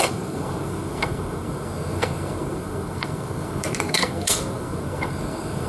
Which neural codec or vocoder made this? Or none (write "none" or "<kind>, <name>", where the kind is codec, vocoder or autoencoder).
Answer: codec, SNAC